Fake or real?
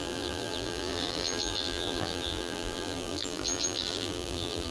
fake